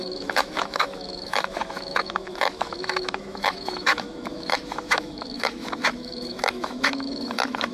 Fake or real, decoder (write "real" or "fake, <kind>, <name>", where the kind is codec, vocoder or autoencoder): fake, autoencoder, DAC-VAE